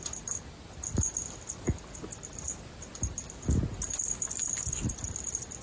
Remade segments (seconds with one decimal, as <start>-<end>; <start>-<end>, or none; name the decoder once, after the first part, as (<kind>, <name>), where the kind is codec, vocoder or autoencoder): none